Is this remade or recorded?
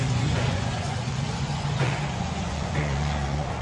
remade